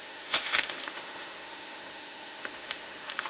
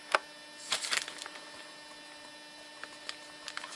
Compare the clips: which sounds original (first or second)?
second